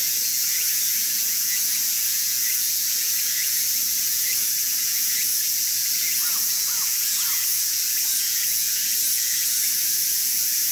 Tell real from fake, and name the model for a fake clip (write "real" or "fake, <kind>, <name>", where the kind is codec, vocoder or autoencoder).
fake, vocoder, Vocos